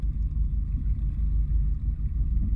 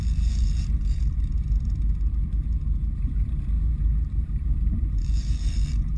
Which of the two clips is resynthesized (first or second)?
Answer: second